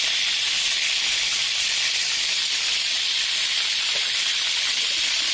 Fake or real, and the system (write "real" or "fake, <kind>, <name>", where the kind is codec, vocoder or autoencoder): fake, vocoder, BigVGAN v2